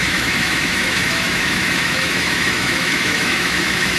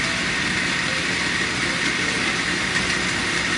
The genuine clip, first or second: second